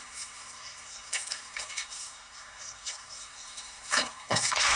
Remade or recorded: remade